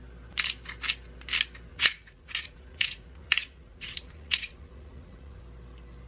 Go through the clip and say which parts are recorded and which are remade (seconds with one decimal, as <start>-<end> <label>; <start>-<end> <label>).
0.0-1.7 recorded; 1.7-5.4 remade; 5.4-6.1 recorded